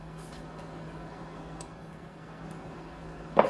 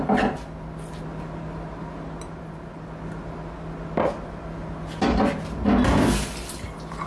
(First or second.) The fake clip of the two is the first